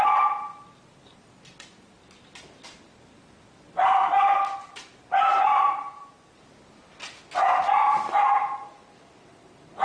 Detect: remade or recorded remade